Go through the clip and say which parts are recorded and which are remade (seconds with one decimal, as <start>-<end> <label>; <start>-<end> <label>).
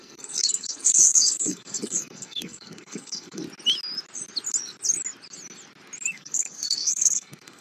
0.0-3.4 remade; 3.4-6.1 recorded; 6.1-7.6 remade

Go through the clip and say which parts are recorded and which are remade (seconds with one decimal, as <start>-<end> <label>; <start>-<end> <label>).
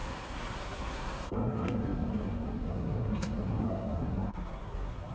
0.0-5.1 remade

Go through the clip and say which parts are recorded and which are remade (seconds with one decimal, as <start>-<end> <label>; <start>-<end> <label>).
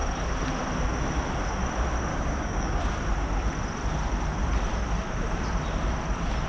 0.0-2.1 recorded; 2.1-2.8 remade; 2.8-6.5 recorded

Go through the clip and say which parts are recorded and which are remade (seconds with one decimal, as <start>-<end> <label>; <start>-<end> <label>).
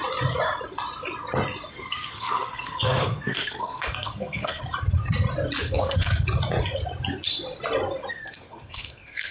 0.0-1.7 recorded; 1.7-4.6 remade; 4.6-5.6 recorded; 5.6-6.1 remade; 6.1-8.1 recorded; 8.1-9.3 remade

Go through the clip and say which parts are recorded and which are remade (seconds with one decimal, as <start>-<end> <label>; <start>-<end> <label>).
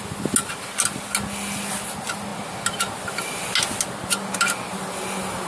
0.0-5.5 recorded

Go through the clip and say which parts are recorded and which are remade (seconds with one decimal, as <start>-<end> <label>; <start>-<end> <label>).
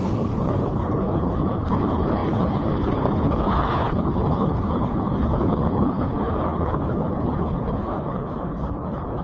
0.0-9.2 remade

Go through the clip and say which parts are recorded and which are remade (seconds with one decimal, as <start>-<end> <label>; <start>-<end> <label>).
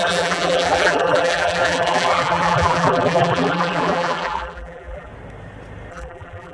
0.0-5.1 remade; 5.1-5.9 recorded; 5.9-6.5 remade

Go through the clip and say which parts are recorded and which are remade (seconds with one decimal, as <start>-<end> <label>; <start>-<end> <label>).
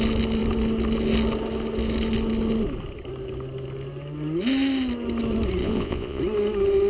0.0-5.6 recorded; 5.6-6.2 remade; 6.2-6.9 recorded